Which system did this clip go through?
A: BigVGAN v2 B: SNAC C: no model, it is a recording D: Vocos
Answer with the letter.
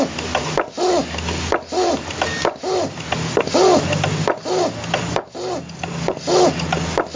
C